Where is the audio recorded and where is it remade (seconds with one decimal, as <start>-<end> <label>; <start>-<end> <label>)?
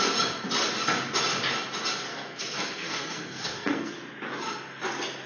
0.0-2.1 recorded; 2.1-3.9 remade; 3.9-5.3 recorded